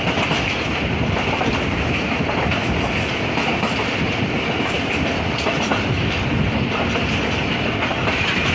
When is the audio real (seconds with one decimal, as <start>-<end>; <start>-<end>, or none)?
0.0-3.5; 6.8-8.5